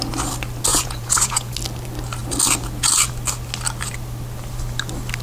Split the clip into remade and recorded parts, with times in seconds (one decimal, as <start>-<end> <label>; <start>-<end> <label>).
0.0-0.7 recorded; 0.7-1.5 remade; 1.5-5.2 recorded